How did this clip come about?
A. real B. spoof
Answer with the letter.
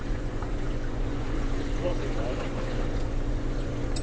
B